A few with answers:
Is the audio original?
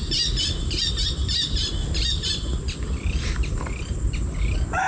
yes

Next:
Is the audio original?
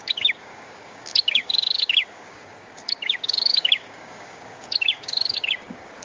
no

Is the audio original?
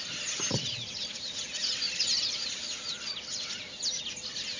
yes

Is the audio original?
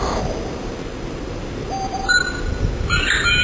yes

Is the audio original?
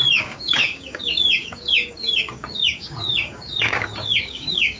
no